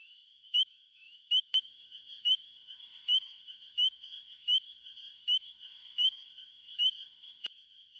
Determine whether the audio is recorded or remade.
remade